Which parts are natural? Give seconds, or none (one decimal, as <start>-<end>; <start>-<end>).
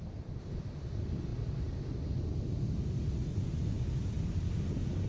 0.0-3.3; 3.9-5.1